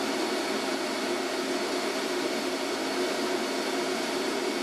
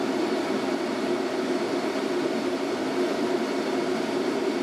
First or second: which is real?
first